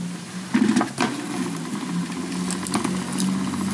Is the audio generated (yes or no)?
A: no